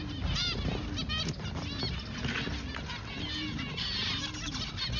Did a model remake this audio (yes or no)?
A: no